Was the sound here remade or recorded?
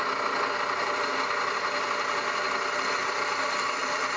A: recorded